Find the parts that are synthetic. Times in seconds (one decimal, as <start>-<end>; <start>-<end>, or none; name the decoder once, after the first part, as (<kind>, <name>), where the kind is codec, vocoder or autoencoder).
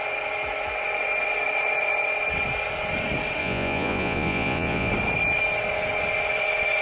3.4-4.9 (vocoder, Vocos)